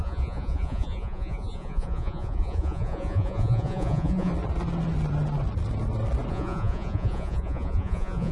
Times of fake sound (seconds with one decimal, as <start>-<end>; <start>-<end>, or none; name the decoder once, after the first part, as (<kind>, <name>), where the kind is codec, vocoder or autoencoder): 0.0-4.3 (vocoder, Vocos); 6.3-8.3